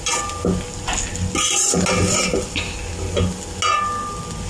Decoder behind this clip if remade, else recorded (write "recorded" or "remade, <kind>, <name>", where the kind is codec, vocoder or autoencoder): recorded